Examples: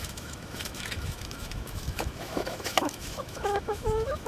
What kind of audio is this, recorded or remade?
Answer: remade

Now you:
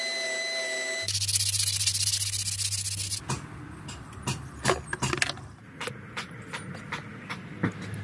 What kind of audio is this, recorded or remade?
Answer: recorded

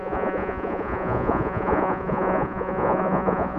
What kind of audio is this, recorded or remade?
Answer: remade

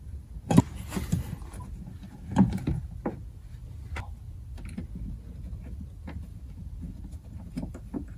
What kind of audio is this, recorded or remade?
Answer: recorded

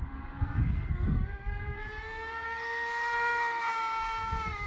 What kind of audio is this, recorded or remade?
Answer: remade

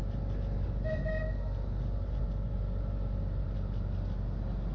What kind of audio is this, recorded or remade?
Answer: recorded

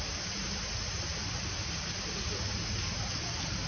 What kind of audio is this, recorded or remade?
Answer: recorded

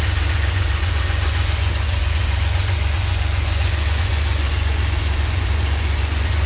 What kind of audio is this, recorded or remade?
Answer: remade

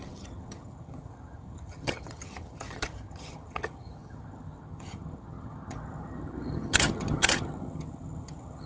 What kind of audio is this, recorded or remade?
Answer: remade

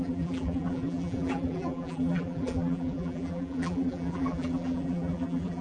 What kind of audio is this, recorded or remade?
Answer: remade